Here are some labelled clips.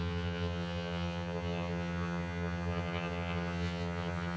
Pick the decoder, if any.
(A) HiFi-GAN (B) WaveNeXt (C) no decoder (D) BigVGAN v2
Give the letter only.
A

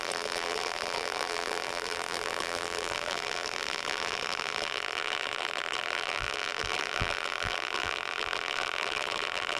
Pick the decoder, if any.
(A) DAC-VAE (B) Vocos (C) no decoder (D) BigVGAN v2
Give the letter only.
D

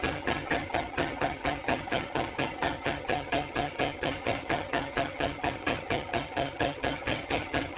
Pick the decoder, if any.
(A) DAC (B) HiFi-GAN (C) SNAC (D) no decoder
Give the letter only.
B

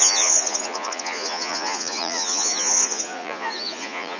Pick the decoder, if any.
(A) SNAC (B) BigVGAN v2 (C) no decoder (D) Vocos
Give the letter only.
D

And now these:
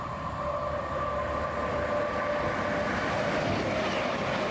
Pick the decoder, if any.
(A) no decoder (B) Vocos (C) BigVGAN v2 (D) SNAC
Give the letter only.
A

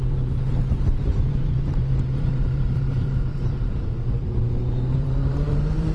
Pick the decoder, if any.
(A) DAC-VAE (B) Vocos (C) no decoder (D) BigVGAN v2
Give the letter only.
D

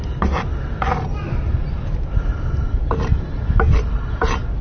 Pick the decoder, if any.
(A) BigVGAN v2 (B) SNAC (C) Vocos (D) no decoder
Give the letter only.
D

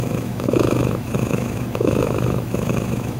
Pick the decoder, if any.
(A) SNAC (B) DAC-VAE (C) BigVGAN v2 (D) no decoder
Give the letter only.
B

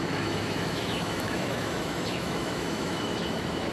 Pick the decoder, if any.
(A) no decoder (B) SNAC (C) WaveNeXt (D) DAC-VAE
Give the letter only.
D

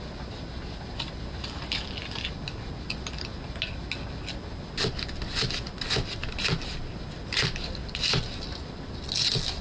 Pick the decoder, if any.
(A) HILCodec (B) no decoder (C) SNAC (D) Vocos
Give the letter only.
B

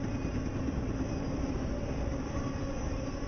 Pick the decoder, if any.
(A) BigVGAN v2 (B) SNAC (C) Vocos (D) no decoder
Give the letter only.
D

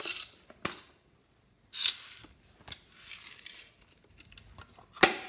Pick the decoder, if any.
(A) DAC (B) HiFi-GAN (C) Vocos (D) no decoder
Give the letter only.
D